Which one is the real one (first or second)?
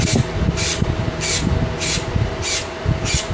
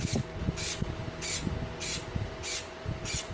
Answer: second